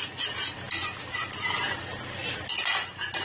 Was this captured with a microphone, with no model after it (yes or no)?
yes